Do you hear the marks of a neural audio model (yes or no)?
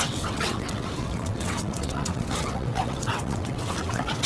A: yes